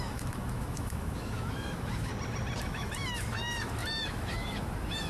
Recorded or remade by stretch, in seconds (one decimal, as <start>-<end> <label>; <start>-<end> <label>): 0.0-2.1 remade; 2.1-2.6 recorded; 2.6-5.1 remade